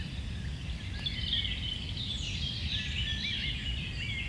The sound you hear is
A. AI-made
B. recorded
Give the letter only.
B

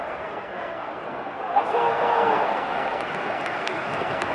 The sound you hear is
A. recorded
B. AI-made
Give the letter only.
B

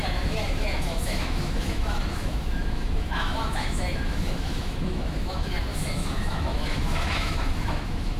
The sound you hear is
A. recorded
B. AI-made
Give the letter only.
B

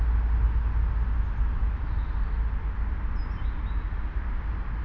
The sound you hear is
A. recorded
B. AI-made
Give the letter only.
A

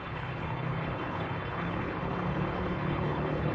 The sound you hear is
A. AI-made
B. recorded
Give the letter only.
A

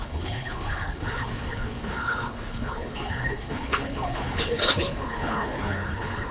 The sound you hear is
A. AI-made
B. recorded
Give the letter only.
A